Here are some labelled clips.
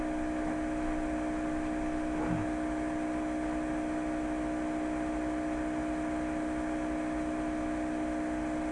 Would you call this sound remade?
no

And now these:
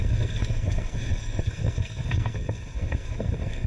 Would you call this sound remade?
yes